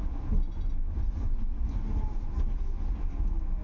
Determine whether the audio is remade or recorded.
recorded